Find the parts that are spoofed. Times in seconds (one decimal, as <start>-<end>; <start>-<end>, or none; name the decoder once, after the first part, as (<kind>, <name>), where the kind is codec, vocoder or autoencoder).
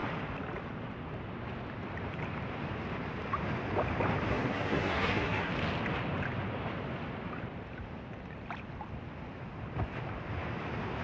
4.3-5.5 (codec, SNAC)